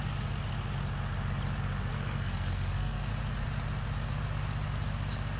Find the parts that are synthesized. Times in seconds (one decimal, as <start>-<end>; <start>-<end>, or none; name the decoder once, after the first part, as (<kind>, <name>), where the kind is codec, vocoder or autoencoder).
1.9-3.1 (codec, SNAC)